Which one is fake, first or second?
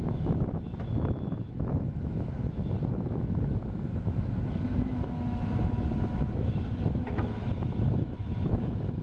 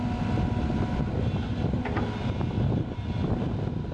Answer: first